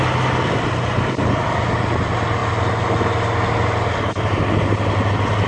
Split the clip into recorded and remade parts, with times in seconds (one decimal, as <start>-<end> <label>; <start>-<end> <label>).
0.0-2.4 remade; 2.4-5.1 recorded; 5.1-5.5 remade